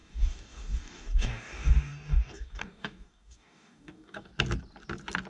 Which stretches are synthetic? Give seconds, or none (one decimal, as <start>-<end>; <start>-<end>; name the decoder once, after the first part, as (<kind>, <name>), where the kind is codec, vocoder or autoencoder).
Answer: 0.0-4.3 (codec, DAC)